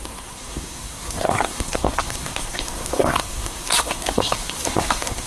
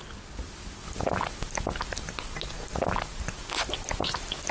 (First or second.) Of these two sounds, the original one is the second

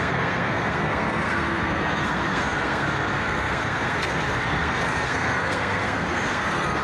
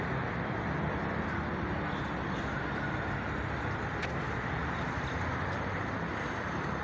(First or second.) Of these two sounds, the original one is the second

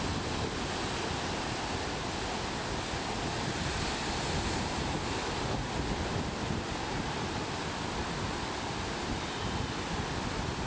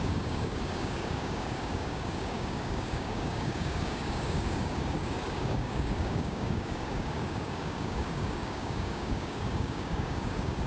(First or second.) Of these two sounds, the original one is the first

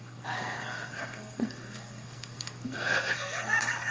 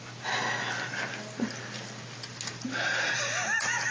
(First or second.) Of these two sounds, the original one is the second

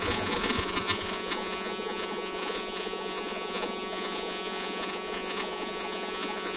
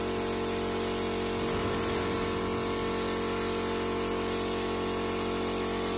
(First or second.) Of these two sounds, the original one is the second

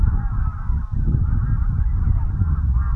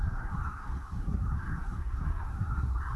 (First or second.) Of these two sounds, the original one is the first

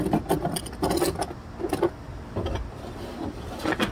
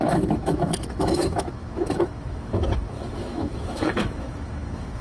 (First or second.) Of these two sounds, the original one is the first